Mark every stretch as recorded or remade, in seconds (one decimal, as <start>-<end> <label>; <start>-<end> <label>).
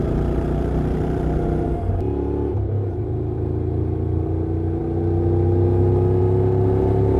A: 0.0-7.2 recorded